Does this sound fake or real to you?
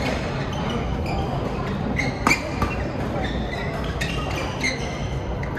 real